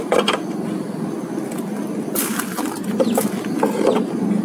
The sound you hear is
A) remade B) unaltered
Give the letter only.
B